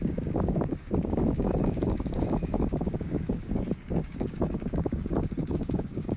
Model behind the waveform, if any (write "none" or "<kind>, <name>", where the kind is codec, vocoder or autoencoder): codec, DAC